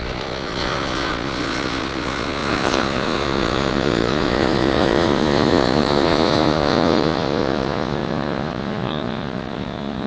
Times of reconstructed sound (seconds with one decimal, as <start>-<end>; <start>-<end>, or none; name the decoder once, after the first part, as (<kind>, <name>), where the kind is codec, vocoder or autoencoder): 0.0-10.1 (vocoder, Vocos)